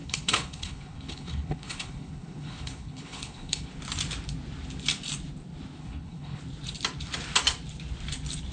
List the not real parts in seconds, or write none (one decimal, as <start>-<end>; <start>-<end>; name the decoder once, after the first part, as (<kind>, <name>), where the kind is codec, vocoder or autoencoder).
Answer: 0.0-3.7 (codec, HILCodec); 5.8-6.4